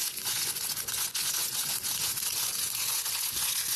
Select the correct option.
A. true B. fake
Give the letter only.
B